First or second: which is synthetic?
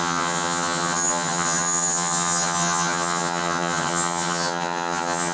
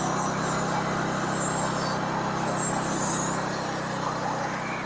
first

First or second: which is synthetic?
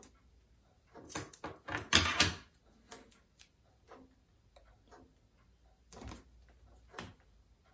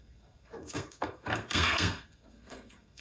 second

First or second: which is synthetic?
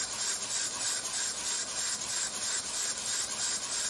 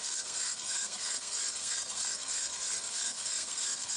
second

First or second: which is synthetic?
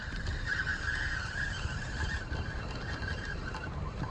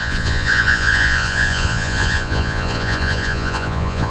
second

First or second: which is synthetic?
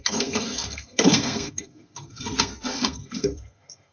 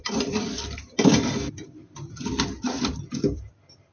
first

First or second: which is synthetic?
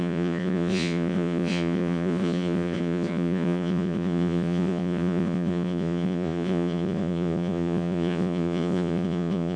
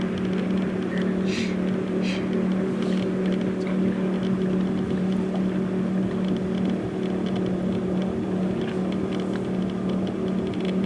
first